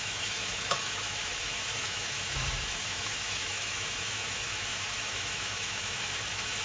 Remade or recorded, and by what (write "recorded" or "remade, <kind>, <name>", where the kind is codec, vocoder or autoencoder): remade, autoencoder, DAC-VAE